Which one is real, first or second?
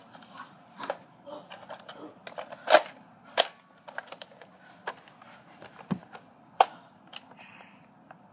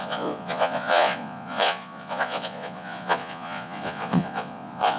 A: first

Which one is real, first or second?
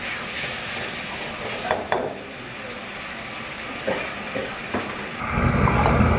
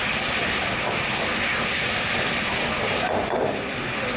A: first